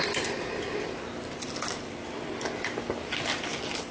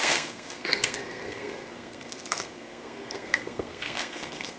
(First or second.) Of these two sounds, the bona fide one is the first